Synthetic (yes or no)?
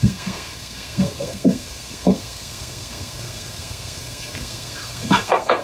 yes